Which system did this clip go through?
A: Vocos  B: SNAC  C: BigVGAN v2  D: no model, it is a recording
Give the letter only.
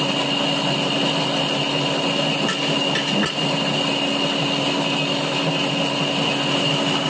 D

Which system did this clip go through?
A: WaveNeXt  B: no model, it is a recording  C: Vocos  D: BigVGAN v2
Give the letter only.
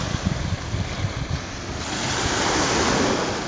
B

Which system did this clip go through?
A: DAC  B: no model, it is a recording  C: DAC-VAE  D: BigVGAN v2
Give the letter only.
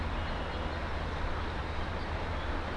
B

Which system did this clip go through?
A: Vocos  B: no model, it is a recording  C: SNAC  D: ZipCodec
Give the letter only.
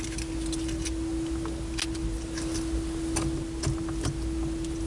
B